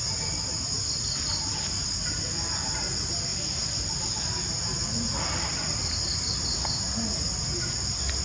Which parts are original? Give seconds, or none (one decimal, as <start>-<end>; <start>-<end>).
0.0-8.2